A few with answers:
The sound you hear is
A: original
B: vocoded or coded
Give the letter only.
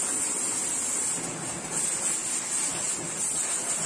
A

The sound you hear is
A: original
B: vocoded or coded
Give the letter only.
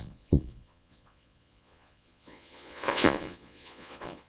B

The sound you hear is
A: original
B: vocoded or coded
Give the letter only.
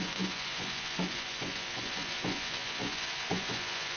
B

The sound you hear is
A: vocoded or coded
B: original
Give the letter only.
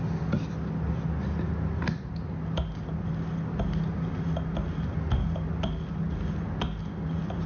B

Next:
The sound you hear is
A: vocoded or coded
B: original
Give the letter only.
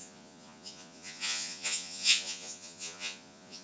A